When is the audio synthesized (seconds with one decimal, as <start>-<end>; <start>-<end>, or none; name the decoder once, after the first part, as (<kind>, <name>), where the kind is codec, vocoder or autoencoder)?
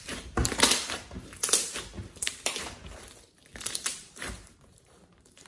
0.0-0.4 (vocoder, BigVGAN v2); 3.7-5.5